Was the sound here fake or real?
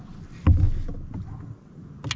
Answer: real